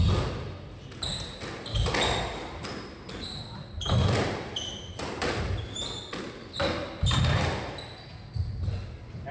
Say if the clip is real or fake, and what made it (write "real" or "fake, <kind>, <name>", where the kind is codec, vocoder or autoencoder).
real